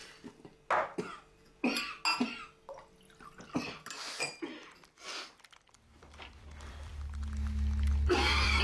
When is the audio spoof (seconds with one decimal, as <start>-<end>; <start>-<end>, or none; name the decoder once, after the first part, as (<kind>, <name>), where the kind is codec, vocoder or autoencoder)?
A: 4.4-6.9 (vocoder, BigVGAN v2); 8.1-8.6